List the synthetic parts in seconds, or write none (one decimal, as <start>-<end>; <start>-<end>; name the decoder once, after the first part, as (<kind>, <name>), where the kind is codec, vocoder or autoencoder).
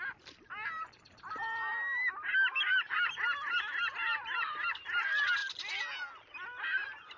none